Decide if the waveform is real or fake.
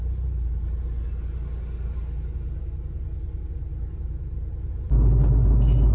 real